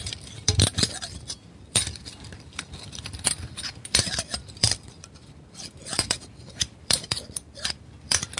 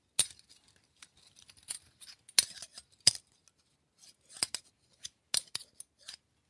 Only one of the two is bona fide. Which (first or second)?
second